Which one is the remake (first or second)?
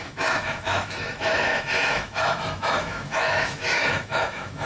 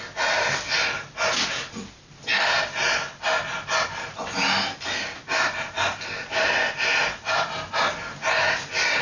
first